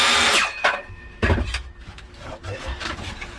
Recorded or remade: remade